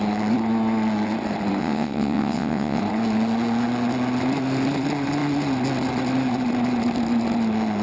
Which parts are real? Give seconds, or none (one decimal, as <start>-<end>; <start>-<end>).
0.0-1.6; 2.8-7.8